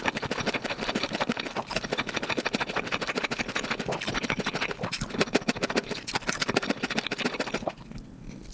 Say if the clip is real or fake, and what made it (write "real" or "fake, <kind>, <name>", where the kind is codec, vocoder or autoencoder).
real